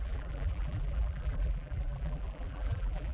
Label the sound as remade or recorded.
remade